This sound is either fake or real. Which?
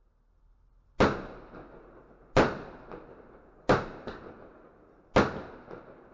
real